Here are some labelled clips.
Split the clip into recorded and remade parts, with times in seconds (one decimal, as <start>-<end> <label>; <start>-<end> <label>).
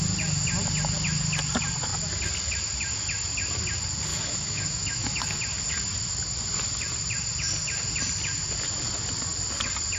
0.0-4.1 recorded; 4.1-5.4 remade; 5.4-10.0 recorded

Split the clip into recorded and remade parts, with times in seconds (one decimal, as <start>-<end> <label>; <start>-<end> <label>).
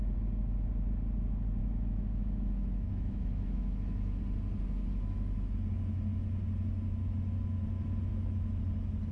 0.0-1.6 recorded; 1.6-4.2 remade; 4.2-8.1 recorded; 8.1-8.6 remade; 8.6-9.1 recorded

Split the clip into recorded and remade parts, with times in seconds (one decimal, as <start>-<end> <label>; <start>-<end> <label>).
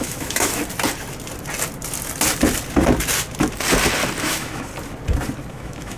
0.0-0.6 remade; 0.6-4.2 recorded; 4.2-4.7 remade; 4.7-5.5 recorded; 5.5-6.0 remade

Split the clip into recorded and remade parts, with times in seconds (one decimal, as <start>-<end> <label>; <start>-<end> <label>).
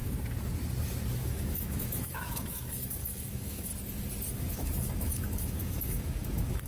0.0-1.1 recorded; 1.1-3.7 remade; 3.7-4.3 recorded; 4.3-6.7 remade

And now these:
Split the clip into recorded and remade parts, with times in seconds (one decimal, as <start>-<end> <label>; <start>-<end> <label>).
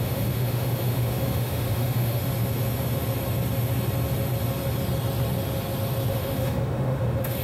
0.0-2.3 remade; 2.3-6.1 recorded; 6.1-7.4 remade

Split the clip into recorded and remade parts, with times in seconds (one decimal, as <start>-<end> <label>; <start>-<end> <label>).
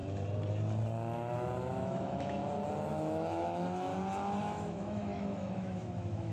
0.0-1.7 recorded; 1.7-2.4 remade; 2.4-2.9 recorded; 2.9-3.9 remade; 3.9-4.4 recorded; 4.4-6.3 remade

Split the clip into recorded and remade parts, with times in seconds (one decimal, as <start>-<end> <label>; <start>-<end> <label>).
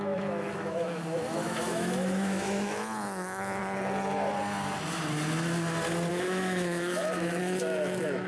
0.0-3.6 remade; 3.6-6.1 recorded; 6.1-8.3 remade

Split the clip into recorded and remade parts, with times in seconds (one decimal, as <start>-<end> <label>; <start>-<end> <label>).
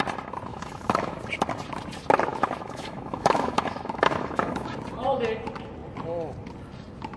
0.0-0.5 recorded; 0.5-1.2 remade; 1.2-2.3 recorded; 2.3-4.7 remade; 4.7-7.2 recorded